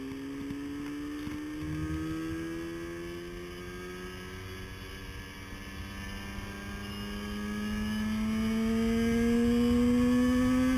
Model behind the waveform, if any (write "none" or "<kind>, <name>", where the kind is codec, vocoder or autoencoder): none